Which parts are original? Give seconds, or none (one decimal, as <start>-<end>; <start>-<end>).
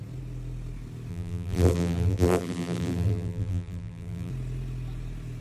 0.0-1.1; 4.3-5.4